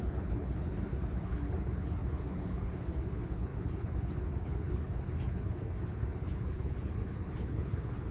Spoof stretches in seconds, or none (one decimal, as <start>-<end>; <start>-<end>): 0.0-8.1